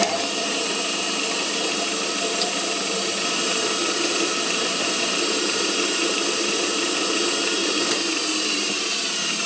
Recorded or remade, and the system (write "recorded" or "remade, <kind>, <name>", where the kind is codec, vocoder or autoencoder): remade, vocoder, BigVGAN v2